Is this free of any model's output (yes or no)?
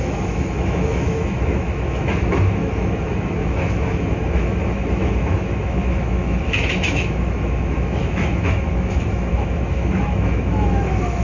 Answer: no